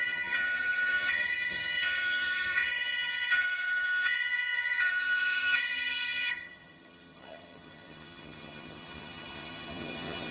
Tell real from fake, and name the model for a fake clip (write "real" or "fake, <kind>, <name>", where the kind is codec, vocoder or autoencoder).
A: fake, vocoder, HiFi-GAN